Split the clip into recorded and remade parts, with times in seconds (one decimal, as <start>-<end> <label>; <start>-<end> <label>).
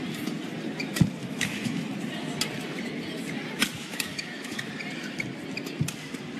0.0-1.2 recorded; 1.2-1.8 remade; 1.8-3.8 recorded; 3.8-4.7 remade; 4.7-6.4 recorded